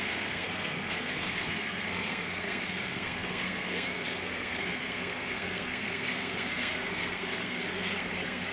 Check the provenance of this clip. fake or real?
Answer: fake